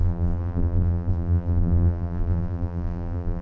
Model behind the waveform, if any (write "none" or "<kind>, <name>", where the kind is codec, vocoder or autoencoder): vocoder, BigVGAN v2